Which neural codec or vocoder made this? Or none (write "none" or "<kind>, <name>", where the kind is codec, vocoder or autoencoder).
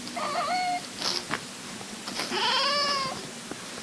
none